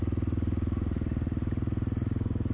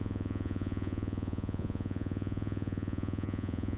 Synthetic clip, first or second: second